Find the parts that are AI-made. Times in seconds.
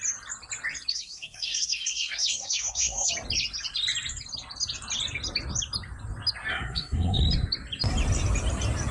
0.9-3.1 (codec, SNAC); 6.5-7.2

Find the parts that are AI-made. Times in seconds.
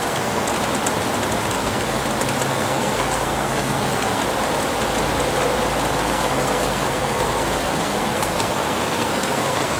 0.0-0.5 (codec, SNAC); 1.5-2.0; 2.5-4.2; 5.9-9.8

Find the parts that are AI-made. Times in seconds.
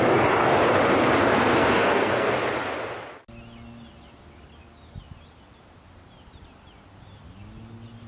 1.5-2.3 (codec, SNAC)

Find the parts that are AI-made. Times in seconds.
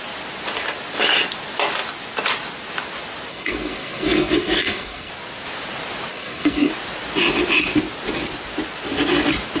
3.3-5.1 (codec, SNAC); 6.1-6.7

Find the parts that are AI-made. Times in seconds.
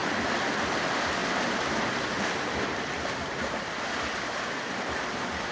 none